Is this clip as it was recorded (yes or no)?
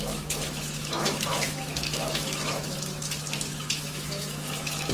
no